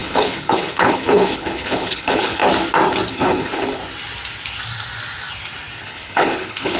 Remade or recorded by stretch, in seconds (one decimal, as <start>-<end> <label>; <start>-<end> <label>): 0.0-2.4 remade; 2.4-3.1 recorded; 3.1-3.8 remade; 3.8-5.8 recorded; 5.8-6.8 remade